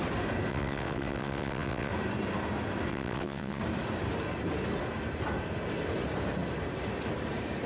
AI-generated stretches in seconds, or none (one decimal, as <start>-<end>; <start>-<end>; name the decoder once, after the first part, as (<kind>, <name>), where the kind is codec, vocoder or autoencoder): 0.5-1.9 (vocoder, WaveNeXt); 2.9-3.6